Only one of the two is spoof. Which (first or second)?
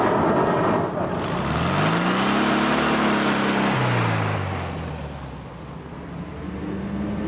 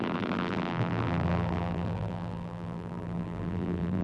second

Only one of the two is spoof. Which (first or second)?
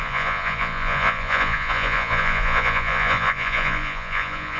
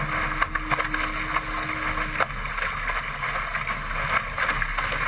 first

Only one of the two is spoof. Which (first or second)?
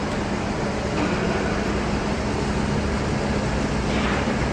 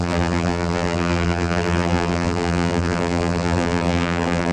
second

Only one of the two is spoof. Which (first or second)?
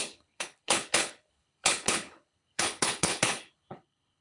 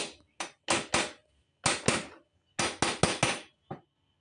first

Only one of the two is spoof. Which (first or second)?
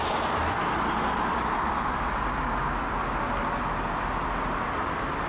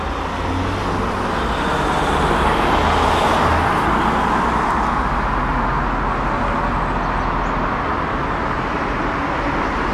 first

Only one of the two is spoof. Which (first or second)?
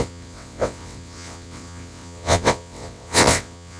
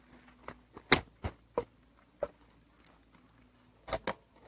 first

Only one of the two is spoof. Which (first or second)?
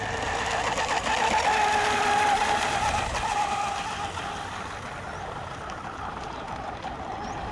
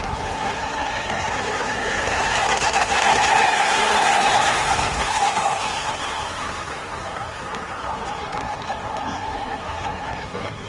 second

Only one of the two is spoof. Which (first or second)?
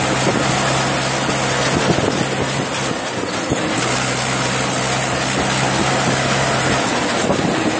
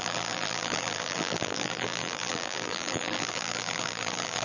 second